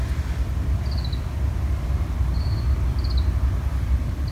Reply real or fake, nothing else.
real